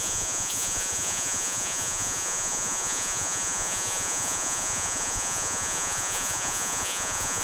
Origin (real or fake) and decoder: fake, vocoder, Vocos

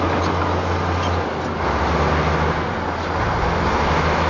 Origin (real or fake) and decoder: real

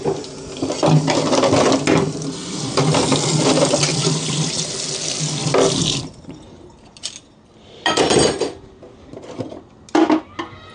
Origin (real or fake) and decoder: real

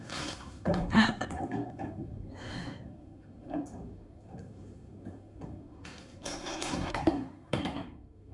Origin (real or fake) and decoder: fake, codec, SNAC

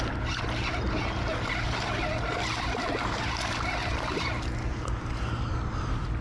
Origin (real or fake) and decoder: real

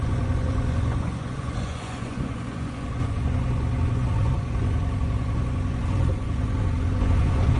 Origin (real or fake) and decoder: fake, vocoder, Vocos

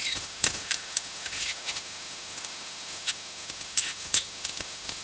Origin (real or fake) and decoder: fake, autoencoder, DAC-VAE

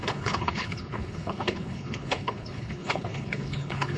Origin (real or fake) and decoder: fake, codec, HILCodec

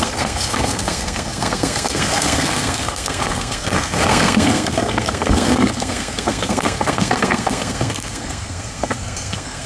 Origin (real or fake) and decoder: fake, codec, SNAC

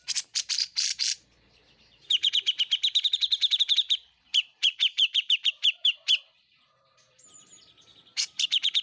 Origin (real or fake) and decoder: fake, vocoder, BigVGAN v2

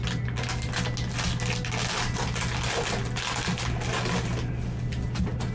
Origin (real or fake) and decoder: real